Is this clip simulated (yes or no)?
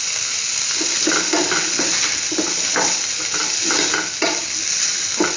no